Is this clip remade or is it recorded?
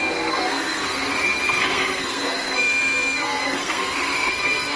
remade